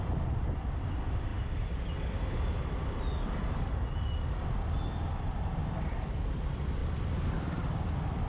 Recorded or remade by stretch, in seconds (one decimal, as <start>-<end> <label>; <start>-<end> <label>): 0.0-6.8 recorded; 6.8-7.6 remade; 7.6-8.3 recorded